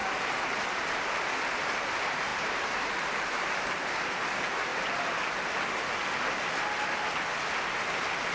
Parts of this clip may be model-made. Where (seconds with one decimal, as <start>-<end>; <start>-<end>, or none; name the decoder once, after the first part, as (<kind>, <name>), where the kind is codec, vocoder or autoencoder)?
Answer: 2.3-3.9 (vocoder, BigVGAN v2)